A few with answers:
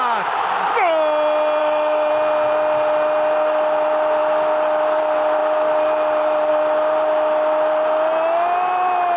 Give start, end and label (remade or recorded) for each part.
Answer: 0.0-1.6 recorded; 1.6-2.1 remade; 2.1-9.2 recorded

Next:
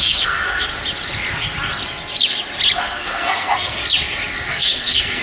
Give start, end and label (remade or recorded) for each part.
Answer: 0.0-0.7 remade; 0.7-2.8 recorded; 2.8-3.8 remade; 3.8-4.5 recorded; 4.5-5.2 remade

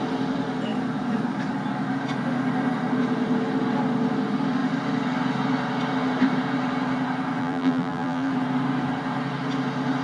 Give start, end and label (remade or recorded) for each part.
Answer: 0.0-7.4 recorded; 7.4-8.3 remade; 8.3-10.0 recorded

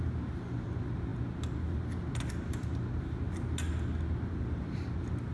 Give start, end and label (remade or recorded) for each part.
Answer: 0.0-5.3 recorded

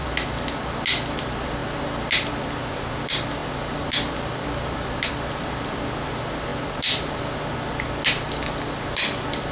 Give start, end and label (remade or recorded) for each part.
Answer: 0.0-9.5 recorded

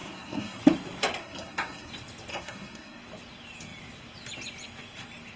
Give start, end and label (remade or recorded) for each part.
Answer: 0.0-0.6 remade; 0.6-1.2 recorded; 1.2-1.9 remade; 1.9-2.3 recorded; 2.3-3.0 remade; 3.0-5.4 recorded